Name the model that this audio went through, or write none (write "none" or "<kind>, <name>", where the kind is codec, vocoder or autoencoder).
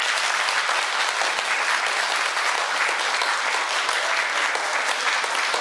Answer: none